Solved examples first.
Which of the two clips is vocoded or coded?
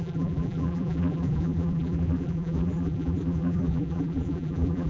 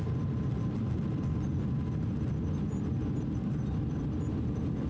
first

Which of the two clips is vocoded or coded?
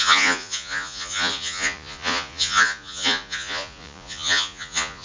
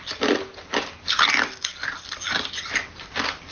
first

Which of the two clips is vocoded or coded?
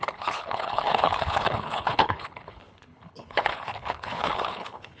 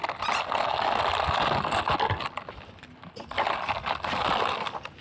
first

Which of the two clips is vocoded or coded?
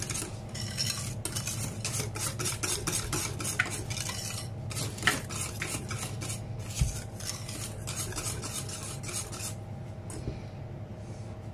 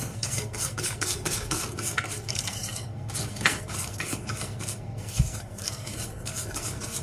second